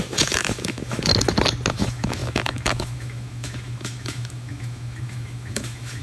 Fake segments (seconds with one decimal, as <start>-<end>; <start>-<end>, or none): 0.0-1.1; 1.7-6.0